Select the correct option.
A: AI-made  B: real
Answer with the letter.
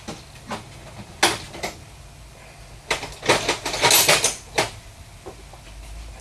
B